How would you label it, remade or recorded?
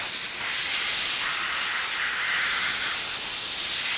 recorded